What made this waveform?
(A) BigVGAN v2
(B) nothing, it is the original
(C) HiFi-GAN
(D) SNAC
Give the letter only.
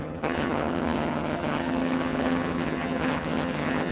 C